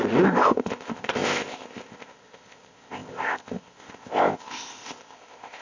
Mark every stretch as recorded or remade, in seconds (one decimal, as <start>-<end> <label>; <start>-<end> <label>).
0.0-5.6 remade